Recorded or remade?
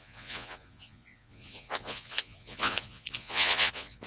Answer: remade